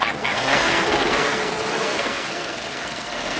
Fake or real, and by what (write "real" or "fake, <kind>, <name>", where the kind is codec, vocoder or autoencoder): fake, codec, SNAC